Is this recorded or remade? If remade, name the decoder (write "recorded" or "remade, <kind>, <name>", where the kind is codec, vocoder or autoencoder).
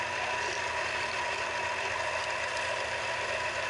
recorded